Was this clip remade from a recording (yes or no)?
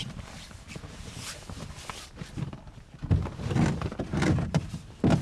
no